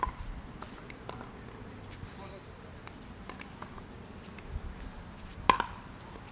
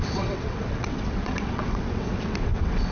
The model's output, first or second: second